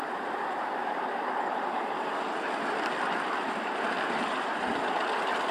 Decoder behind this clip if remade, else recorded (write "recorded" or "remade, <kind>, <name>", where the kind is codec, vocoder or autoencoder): remade, vocoder, BigVGAN v2